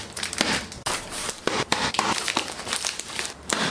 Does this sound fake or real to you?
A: real